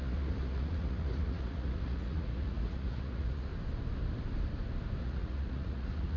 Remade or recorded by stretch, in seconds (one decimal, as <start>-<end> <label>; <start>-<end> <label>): 0.0-3.5 remade; 3.5-5.0 recorded; 5.0-6.2 remade